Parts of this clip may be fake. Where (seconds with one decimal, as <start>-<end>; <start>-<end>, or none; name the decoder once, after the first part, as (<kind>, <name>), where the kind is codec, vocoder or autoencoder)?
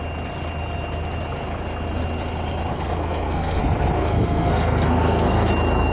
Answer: 2.7-3.6 (codec, SNAC); 4.0-5.5